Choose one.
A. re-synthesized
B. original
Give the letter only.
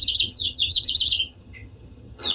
A